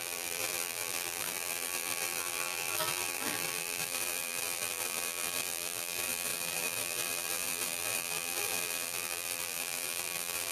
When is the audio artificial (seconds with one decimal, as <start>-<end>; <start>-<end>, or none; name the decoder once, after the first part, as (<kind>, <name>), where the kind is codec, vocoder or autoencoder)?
0.0-10.5 (vocoder, BigVGAN v2)

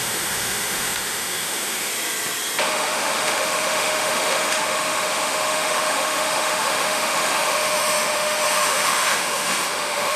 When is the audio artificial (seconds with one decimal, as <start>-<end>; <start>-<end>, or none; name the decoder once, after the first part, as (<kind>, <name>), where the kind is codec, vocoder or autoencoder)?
0.0-1.9 (autoencoder, DAC-VAE); 2.7-10.2